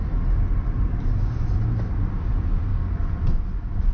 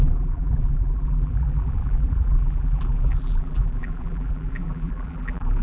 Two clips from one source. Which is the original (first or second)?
first